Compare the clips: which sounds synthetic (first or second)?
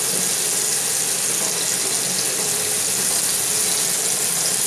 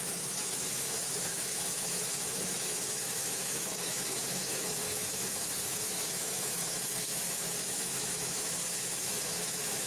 second